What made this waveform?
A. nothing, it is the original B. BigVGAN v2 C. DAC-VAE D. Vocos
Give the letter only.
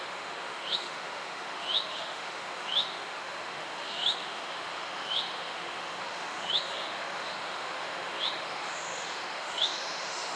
C